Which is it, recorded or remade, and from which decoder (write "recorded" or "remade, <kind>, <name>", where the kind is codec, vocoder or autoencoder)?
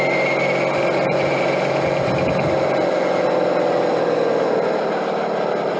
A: recorded